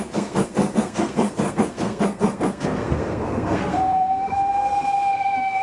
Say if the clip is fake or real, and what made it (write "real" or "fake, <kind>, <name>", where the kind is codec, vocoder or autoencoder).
fake, codec, SNAC